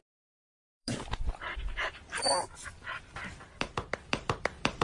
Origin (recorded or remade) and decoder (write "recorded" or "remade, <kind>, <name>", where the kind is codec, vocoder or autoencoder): remade, vocoder, BigVGAN v2